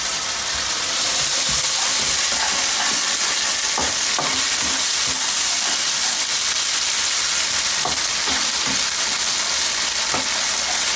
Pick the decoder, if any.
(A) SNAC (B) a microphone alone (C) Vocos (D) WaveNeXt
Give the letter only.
B